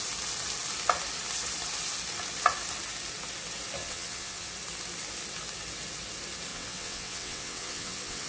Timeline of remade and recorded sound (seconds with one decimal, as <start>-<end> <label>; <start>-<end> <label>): 0.0-3.8 recorded; 3.8-4.5 remade; 4.5-6.5 recorded; 6.5-8.3 remade